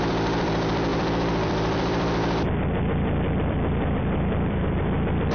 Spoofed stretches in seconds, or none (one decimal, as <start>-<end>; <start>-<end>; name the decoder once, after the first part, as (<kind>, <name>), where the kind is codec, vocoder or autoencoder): 0.0-5.3 (vocoder, BigVGAN v2)